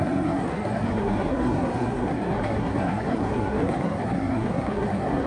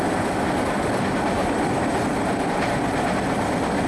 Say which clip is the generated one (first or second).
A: first